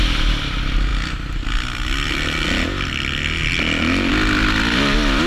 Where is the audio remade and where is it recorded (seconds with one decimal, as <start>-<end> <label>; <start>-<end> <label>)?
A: 0.0-5.3 recorded